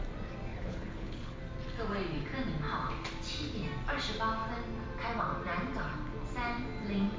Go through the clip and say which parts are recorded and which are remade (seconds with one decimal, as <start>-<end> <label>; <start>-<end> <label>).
0.0-0.5 recorded; 0.5-1.4 remade; 1.4-7.2 recorded